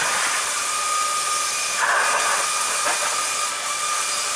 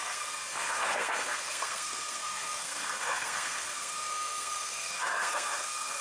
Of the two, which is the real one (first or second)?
first